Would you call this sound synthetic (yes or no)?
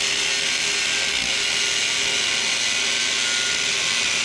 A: no